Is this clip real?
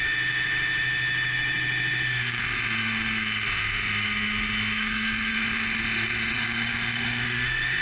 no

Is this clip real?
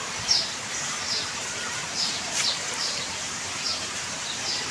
no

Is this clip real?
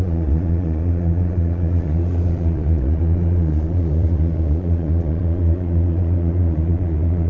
no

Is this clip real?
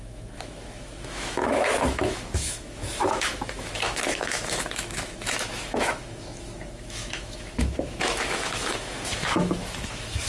no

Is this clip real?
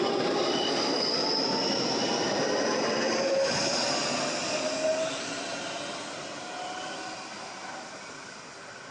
yes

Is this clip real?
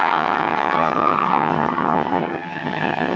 no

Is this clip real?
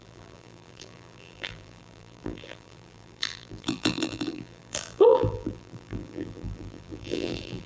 no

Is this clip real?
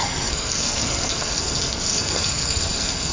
no